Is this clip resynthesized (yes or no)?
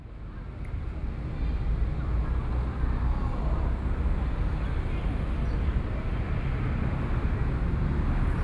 no